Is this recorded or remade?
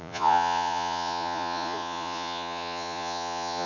remade